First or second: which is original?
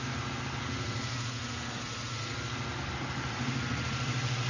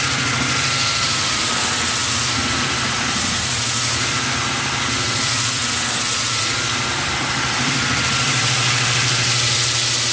first